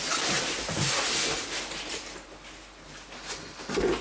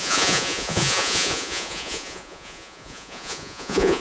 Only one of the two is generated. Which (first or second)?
second